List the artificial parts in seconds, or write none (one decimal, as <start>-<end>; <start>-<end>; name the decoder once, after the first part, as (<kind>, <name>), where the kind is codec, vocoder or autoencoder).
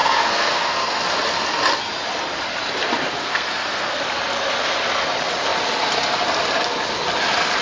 0.0-1.0 (codec, SNAC); 3.2-4.0